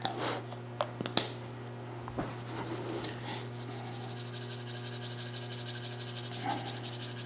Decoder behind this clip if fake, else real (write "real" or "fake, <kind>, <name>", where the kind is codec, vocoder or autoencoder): real